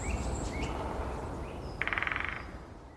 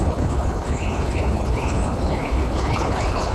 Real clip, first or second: first